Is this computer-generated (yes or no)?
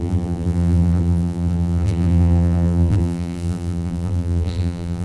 yes